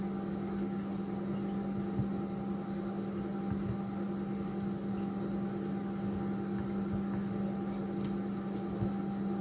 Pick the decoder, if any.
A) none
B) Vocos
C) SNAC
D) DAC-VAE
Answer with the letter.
A